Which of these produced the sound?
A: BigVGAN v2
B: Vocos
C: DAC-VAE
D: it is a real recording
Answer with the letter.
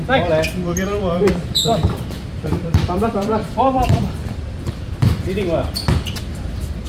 A